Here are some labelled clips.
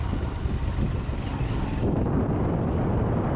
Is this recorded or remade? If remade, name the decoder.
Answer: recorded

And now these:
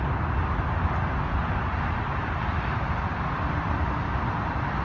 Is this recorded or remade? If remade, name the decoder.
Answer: recorded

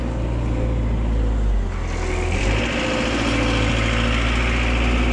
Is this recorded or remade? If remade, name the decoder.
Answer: recorded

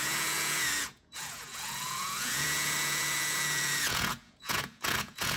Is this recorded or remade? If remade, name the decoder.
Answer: remade, vocoder, Vocos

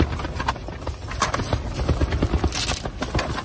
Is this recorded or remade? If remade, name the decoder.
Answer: recorded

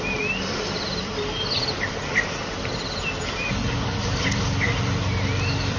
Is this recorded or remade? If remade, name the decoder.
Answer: recorded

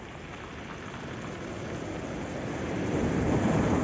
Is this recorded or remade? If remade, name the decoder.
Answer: recorded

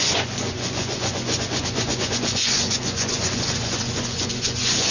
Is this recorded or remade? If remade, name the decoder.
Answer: remade, vocoder, Vocos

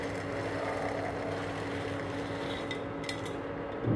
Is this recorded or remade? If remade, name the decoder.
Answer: recorded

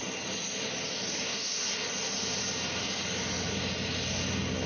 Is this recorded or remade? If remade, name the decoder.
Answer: recorded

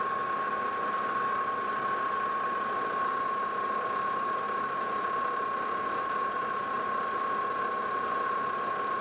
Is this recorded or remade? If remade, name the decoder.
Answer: recorded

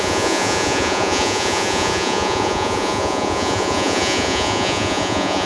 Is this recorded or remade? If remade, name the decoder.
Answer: remade, vocoder, Vocos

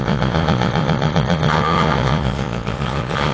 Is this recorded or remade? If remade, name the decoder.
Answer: remade, vocoder, Vocos